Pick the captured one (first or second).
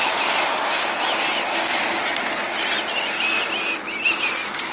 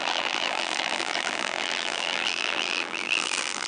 first